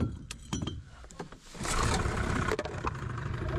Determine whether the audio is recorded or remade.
remade